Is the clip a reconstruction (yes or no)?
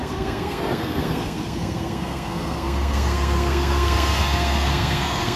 yes